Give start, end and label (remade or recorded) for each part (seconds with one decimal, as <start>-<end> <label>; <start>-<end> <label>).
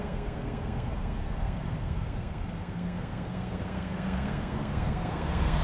0.0-5.6 remade